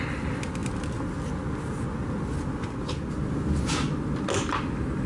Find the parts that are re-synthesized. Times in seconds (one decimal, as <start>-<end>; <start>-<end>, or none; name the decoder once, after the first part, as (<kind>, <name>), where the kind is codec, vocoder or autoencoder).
none